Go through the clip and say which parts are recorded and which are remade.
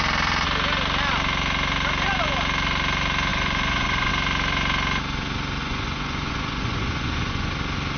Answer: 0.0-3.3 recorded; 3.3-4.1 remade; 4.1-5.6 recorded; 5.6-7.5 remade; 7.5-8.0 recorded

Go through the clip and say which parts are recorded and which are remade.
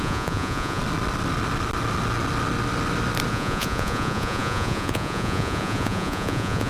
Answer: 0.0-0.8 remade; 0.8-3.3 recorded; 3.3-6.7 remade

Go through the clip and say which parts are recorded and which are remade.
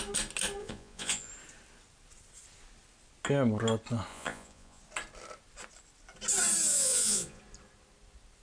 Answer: 0.0-0.6 recorded; 0.6-1.3 remade; 1.3-4.1 recorded; 4.1-4.8 remade; 4.8-6.7 recorded; 6.7-7.4 remade; 7.4-8.4 recorded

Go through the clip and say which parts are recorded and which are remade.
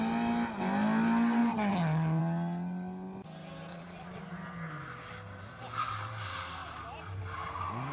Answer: 0.0-3.7 recorded; 3.7-4.2 remade; 4.2-7.9 recorded